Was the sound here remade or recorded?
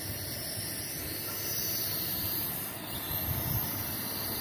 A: recorded